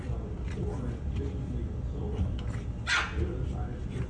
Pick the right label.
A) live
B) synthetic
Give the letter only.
A